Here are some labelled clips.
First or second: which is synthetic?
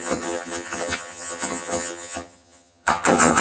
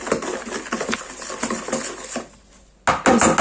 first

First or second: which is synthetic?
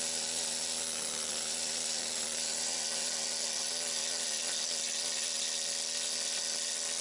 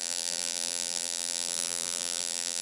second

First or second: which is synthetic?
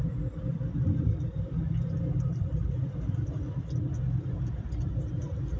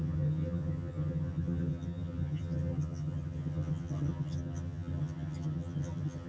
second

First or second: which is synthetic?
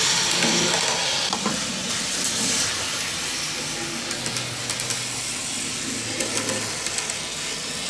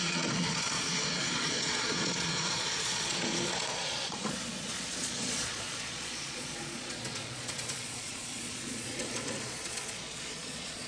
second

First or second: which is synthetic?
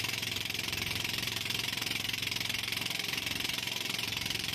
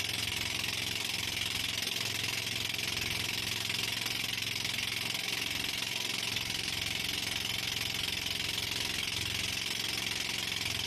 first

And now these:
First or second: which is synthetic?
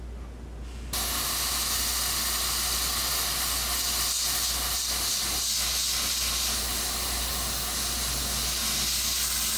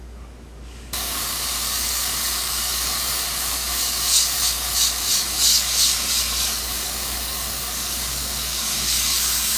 second